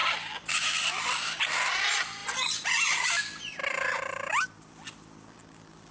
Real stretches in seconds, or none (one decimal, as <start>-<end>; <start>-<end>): 1.4-2.2; 3.2-5.9